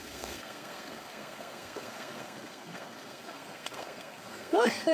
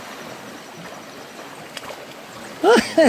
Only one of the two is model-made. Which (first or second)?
first